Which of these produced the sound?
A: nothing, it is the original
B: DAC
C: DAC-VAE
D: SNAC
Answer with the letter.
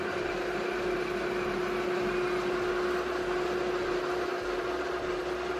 A